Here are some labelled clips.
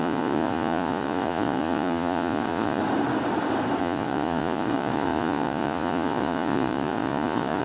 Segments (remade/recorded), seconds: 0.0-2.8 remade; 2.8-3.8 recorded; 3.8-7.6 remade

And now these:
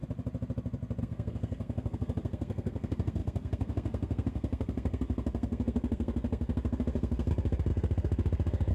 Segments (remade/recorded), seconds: 0.0-1.0 recorded; 1.0-8.7 remade

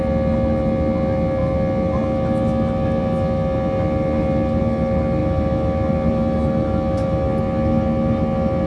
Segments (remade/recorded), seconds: 0.0-8.7 recorded

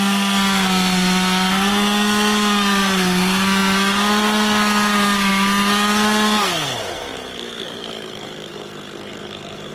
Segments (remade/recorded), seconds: 0.0-9.7 remade